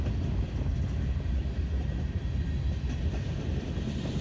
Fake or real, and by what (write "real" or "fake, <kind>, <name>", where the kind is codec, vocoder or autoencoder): real